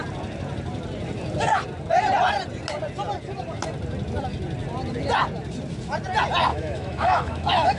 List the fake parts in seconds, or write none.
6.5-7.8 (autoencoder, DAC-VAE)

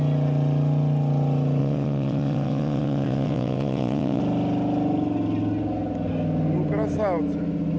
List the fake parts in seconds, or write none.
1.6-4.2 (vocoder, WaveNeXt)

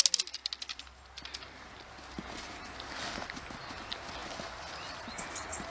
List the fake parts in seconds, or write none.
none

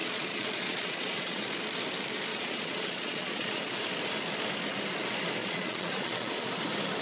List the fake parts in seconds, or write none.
0.0-1.4 (vocoder, Vocos); 2.3-3.6; 5.4-6.5

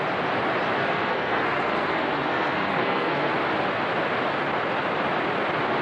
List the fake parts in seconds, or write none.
0.8-3.3 (codec, SNAC)

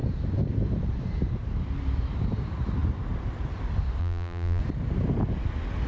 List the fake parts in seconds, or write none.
4.0-4.6 (vocoder, BigVGAN v2)